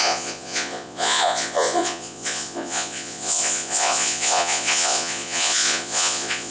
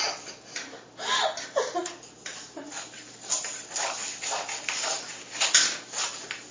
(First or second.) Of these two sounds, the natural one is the second